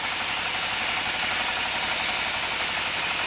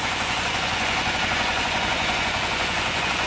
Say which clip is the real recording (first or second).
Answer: first